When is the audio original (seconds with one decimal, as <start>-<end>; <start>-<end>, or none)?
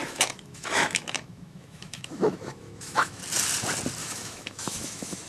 3.2-4.0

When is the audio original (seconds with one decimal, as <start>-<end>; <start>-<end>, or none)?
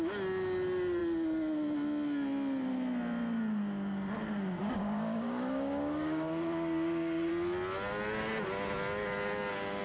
0.0-4.6; 7.3-9.8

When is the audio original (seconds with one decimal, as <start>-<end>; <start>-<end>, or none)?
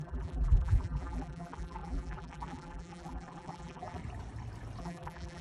4.0-4.8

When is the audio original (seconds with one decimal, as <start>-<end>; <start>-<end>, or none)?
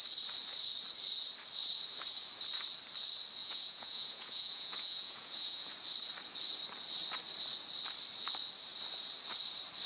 0.0-3.4; 5.7-9.9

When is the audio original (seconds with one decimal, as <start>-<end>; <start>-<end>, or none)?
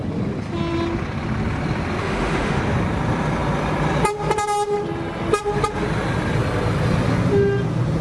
0.0-2.0; 2.6-8.0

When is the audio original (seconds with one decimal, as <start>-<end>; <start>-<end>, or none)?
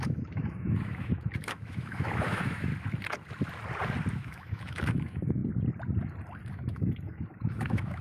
2.7-4.1; 5.4-6.5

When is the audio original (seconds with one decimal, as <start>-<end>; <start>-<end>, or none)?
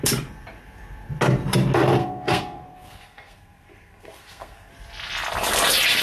0.0-2.0; 4.7-6.0